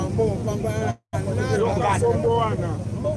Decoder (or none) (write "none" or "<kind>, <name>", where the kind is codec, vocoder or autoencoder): none